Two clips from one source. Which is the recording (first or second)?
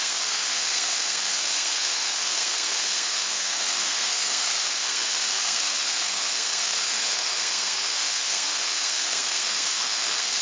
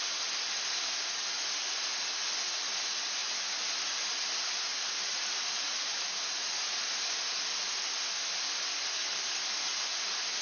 second